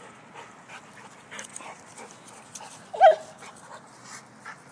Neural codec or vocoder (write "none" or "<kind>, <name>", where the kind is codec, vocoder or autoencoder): none